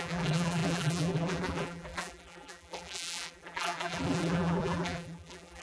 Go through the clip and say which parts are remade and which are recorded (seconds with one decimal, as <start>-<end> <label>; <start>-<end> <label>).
0.0-5.6 remade